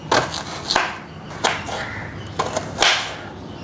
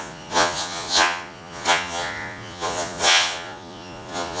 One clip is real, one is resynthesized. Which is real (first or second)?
first